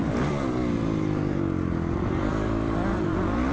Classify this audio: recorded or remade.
recorded